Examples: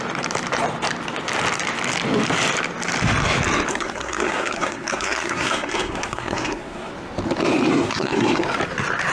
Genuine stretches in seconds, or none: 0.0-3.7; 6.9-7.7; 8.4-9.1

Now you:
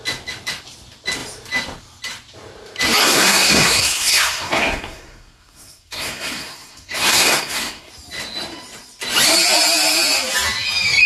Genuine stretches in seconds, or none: 0.0-3.0; 7.9-11.1

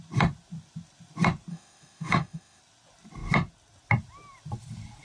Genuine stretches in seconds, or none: 0.0-1.5; 2.6-5.0